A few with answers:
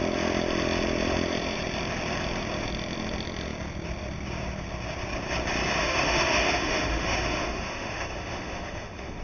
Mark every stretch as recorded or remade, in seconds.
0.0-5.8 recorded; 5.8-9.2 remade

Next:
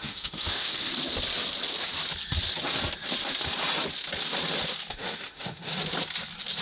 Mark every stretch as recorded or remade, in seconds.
0.0-0.9 remade; 0.9-4.9 recorded; 4.9-5.7 remade; 5.7-6.6 recorded

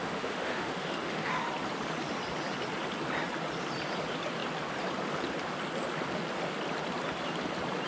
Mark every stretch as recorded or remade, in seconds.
0.0-1.3 remade; 1.3-7.9 recorded

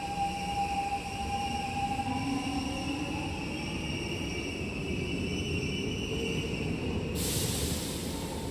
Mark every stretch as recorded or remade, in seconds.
0.0-8.5 recorded

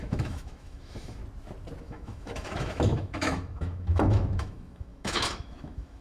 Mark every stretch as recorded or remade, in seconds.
0.0-1.2 remade; 1.2-1.8 recorded; 1.8-6.0 remade

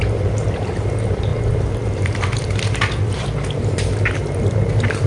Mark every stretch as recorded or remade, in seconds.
0.0-5.1 recorded